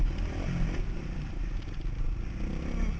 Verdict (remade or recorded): recorded